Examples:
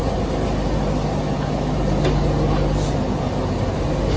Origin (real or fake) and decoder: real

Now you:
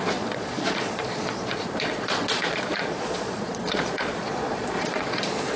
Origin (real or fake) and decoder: fake, vocoder, Vocos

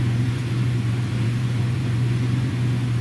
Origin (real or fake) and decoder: fake, vocoder, Vocos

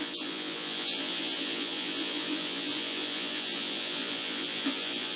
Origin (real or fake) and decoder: fake, vocoder, Vocos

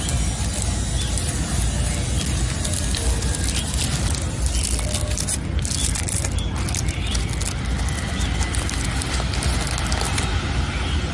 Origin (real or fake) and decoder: real